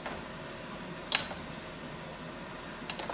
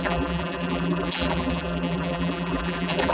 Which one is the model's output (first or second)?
second